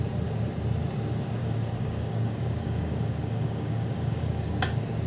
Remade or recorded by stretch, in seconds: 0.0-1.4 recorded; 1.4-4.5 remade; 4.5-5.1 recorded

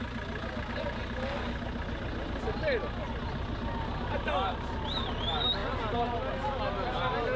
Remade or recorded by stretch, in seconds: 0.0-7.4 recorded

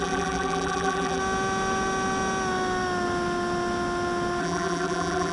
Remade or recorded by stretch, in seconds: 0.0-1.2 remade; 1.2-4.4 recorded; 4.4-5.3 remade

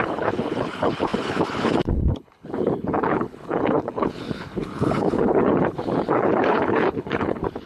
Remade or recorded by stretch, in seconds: 0.0-7.7 remade

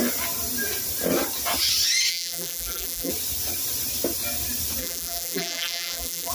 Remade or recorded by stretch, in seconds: 0.0-2.1 recorded; 2.1-3.1 remade; 3.1-4.8 recorded; 4.8-6.3 remade

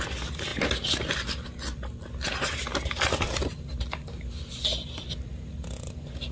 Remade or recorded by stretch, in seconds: 0.0-6.3 recorded